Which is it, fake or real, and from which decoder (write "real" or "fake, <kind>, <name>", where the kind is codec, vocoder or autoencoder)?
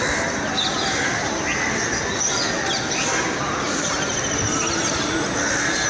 real